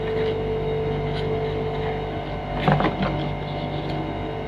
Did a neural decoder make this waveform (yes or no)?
no